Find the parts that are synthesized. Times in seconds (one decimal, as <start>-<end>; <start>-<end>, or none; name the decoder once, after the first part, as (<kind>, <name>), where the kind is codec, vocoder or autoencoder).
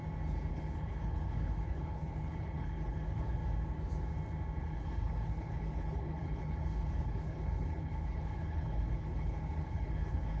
0.5-3.4 (codec, HILCodec); 4.6-10.4